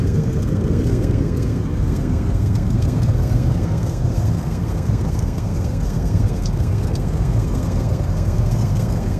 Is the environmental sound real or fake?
fake